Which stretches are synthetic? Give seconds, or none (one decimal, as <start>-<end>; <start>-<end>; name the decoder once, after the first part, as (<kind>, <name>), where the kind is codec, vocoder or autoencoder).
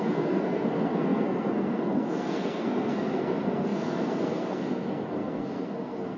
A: 0.0-6.2 (codec, SNAC)